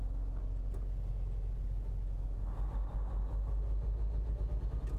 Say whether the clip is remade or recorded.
recorded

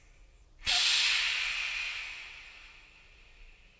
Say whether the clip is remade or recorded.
recorded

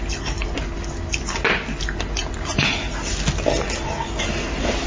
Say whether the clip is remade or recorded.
recorded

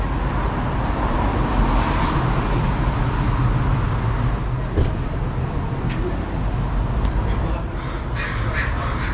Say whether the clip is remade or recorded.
recorded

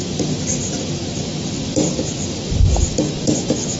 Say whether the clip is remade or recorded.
recorded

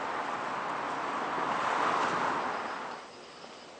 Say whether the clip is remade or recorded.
recorded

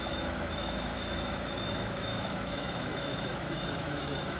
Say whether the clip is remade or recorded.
remade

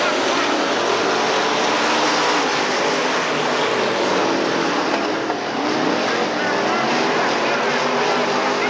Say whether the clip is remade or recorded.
recorded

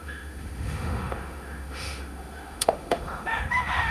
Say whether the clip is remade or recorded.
remade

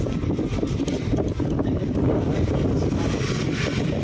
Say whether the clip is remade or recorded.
recorded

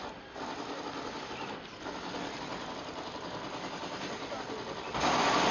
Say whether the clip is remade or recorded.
recorded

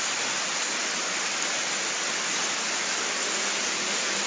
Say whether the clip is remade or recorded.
recorded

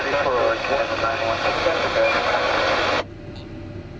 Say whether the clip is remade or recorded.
recorded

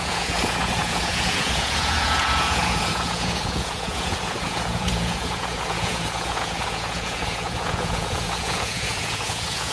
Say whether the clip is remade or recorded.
remade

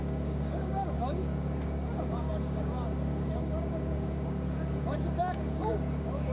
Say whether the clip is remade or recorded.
remade